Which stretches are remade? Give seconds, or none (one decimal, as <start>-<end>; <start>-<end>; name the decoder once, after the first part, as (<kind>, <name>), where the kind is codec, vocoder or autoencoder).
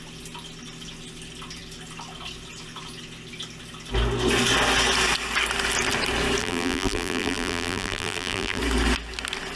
6.4-8.6 (vocoder, BigVGAN v2)